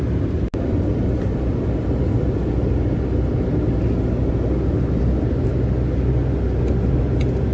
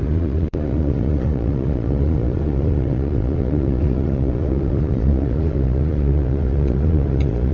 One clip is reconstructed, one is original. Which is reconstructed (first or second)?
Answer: second